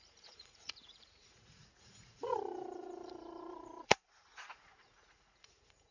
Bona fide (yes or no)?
no